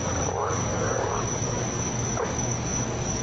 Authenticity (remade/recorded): remade